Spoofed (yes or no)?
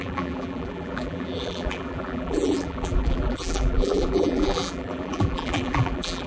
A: yes